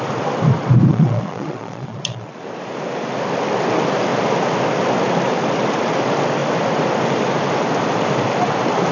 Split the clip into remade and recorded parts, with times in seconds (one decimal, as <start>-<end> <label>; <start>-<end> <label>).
0.0-0.9 recorded; 0.9-2.4 remade; 2.4-8.9 recorded